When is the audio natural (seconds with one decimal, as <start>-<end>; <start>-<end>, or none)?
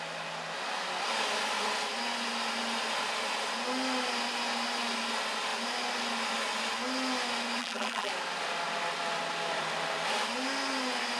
0.0-7.6; 8.1-11.2